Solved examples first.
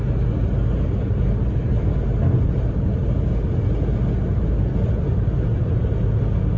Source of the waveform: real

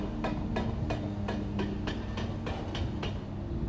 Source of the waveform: real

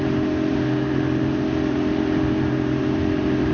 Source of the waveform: fake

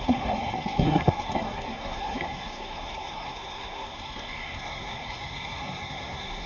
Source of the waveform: fake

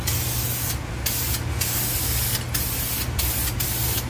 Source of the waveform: real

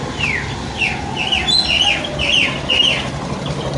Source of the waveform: real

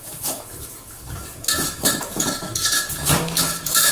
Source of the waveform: fake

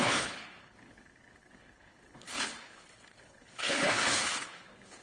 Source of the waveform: fake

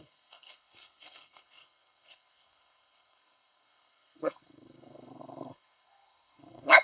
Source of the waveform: fake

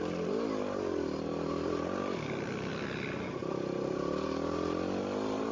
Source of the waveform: real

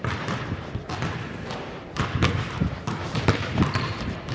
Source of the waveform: fake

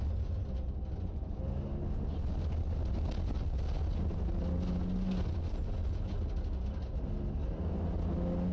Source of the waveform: real